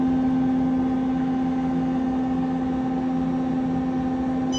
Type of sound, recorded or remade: recorded